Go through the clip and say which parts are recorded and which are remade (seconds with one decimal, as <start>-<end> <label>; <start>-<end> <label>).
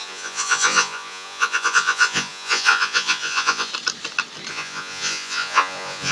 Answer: 0.0-3.7 remade; 3.7-4.5 recorded; 4.5-6.1 remade